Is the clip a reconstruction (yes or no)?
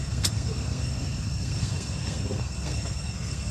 yes